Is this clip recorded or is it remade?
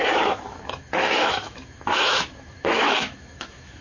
remade